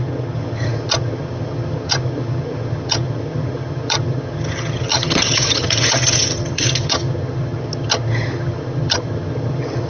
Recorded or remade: remade